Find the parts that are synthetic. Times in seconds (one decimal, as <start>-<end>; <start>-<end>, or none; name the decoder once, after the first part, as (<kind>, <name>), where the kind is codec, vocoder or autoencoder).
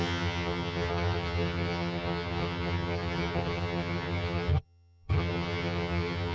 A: 0.0-6.3 (vocoder, HiFi-GAN)